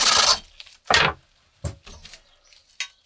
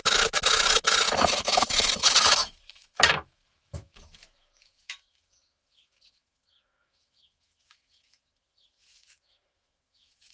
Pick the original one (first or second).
first